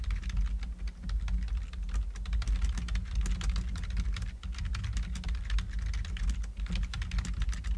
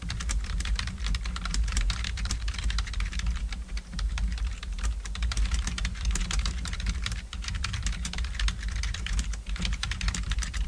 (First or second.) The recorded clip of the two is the first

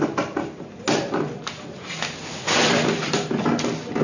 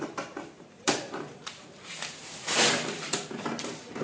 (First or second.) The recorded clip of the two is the first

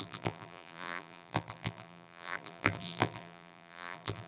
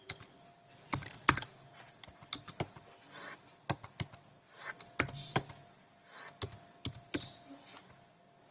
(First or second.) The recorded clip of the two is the second